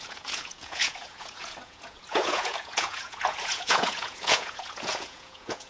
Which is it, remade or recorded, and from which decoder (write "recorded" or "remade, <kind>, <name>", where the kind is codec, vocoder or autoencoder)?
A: remade, vocoder, Vocos